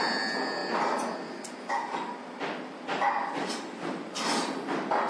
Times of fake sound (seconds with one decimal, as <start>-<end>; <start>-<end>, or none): none